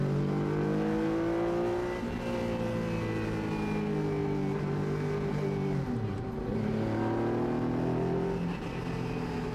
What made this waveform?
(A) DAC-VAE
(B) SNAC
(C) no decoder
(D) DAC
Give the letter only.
C